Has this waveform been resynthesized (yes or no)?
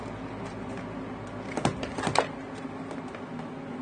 no